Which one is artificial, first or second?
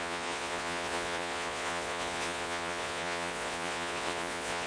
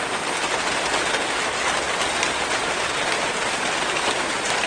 first